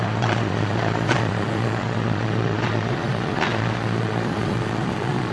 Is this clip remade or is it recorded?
remade